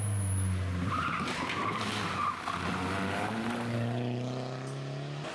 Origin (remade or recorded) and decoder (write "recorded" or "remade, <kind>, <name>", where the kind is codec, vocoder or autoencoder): recorded